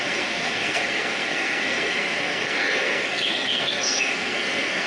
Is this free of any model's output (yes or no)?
no